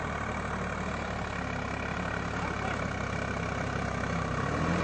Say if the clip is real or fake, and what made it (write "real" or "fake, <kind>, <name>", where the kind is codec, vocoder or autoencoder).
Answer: real